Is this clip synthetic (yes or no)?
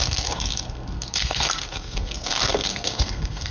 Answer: yes